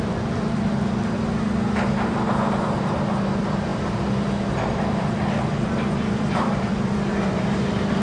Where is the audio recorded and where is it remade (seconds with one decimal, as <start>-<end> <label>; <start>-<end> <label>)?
0.0-8.0 remade